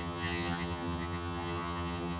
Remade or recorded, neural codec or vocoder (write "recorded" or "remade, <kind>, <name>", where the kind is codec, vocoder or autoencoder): remade, vocoder, HiFi-GAN